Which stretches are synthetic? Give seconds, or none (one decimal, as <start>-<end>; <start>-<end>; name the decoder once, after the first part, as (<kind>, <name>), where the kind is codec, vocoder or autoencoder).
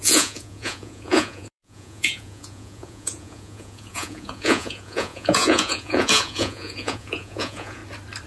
0.0-7.8 (vocoder, Vocos)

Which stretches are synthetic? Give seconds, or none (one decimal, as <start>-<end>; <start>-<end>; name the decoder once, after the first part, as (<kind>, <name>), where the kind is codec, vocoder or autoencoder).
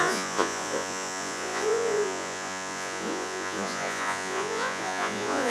0.0-5.5 (vocoder, Vocos)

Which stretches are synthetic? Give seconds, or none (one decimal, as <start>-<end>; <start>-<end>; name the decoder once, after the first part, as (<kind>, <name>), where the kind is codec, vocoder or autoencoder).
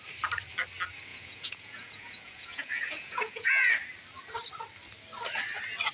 1.1-3.7 (vocoder, Vocos)